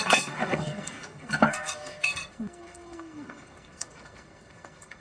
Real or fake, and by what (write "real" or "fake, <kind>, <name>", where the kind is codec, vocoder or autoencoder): fake, codec, SNAC